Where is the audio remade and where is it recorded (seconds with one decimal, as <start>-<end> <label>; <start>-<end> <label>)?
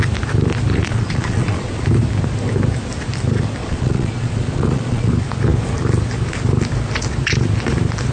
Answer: 0.0-0.7 recorded; 0.7-1.8 remade; 1.8-3.6 recorded; 3.6-5.1 remade; 5.1-8.1 recorded